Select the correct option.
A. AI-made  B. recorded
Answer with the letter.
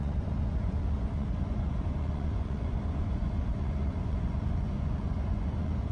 A